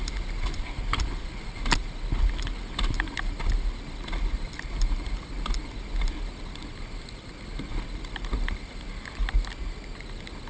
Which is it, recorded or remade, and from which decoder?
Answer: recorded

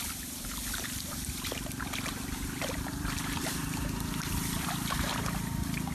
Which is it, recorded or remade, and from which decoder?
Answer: remade, vocoder, BigVGAN v2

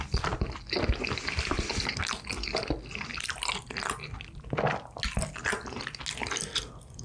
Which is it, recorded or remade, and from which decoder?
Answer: recorded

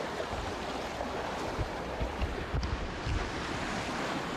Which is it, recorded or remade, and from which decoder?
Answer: remade, vocoder, BigVGAN v2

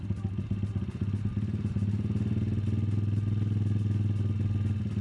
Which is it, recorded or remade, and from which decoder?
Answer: recorded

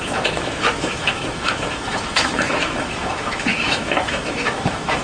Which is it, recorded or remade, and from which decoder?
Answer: remade, autoencoder, DAC-VAE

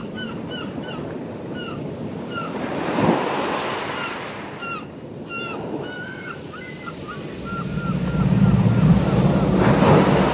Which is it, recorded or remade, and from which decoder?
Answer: recorded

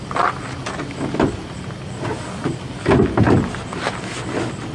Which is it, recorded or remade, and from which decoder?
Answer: recorded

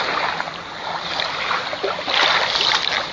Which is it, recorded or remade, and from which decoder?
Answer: recorded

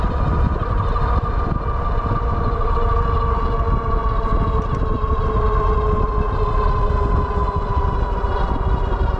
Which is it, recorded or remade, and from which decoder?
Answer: recorded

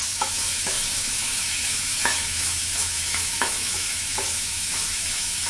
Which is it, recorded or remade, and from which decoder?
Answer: remade, autoencoder, DAC-VAE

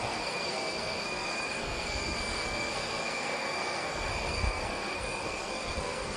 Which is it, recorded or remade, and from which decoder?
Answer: remade, codec, SNAC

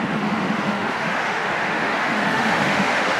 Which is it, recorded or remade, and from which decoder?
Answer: remade, autoencoder, DAC-VAE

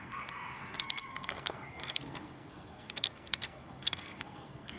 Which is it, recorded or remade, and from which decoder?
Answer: remade, codec, SNAC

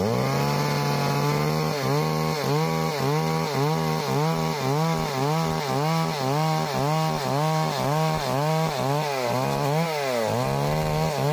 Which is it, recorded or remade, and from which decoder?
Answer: recorded